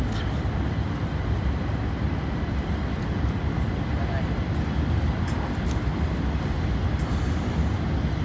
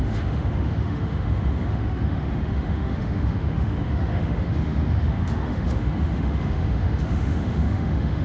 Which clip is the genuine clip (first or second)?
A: first